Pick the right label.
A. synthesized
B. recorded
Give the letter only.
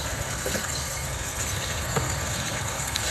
A